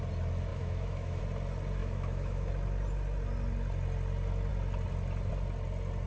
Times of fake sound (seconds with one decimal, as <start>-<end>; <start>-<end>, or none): 0.5-1.2; 1.8-2.5